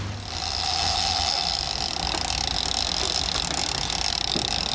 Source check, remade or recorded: recorded